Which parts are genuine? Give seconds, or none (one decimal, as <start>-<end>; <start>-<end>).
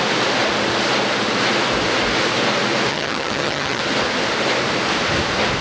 0.0-2.9; 3.8-5.6